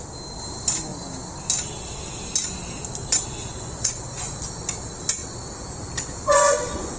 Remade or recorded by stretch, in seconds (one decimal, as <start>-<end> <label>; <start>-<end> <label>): 0.0-3.5 recorded; 3.5-4.6 remade; 4.6-5.2 recorded; 5.2-7.0 remade